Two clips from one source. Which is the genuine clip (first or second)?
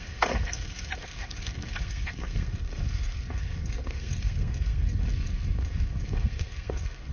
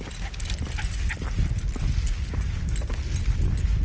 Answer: second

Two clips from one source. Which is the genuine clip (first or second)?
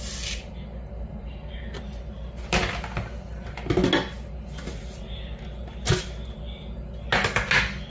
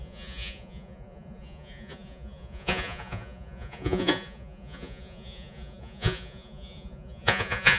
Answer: first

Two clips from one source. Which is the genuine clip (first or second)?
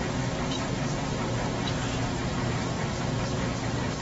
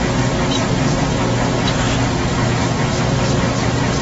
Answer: second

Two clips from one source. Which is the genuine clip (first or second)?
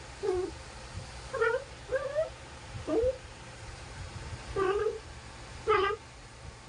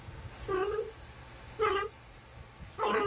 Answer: second